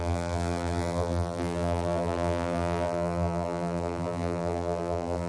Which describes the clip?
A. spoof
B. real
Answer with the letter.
A